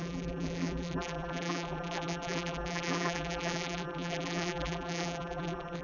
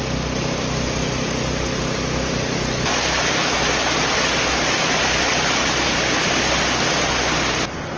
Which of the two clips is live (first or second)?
second